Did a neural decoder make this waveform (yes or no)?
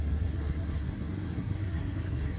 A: yes